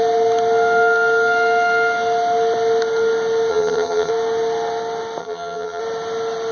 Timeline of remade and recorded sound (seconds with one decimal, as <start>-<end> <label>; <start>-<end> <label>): 0.0-3.5 recorded; 3.5-4.1 remade; 4.1-5.2 recorded; 5.2-5.8 remade; 5.8-6.5 recorded